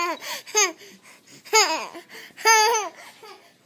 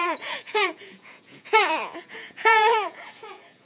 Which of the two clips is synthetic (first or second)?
second